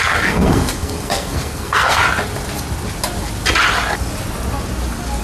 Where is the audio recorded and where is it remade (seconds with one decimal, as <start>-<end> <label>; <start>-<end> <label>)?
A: 0.0-2.0 remade; 2.0-5.2 recorded